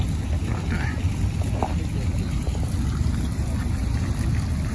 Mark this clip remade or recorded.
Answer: recorded